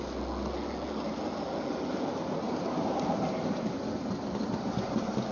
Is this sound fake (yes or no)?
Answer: no